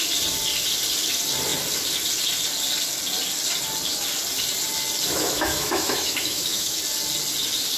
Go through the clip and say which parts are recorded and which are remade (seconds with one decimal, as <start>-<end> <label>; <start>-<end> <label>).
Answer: 0.0-5.1 recorded; 5.1-6.8 remade; 6.8-7.8 recorded